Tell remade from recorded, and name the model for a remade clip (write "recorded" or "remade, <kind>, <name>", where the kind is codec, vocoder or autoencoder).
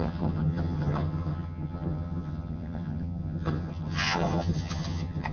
remade, vocoder, HiFi-GAN